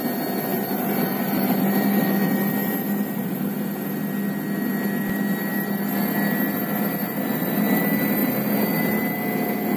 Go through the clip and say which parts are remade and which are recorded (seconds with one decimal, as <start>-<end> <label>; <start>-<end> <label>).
0.0-0.5 recorded; 0.5-2.0 remade; 2.0-2.6 recorded; 2.6-3.6 remade; 3.6-9.8 recorded